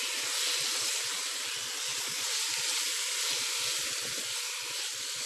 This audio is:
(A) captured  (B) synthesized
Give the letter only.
A